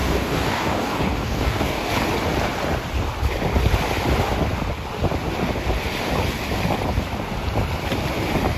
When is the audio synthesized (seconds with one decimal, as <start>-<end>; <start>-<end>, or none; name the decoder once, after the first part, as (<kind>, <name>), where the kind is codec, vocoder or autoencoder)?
0.0-1.9 (codec, DAC)